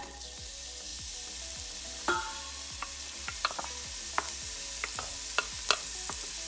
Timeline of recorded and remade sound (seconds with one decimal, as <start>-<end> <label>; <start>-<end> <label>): 0.0-6.5 recorded